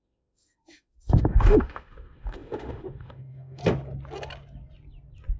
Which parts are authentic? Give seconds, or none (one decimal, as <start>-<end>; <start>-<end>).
3.6-5.4